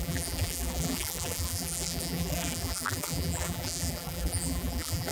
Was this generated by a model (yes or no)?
yes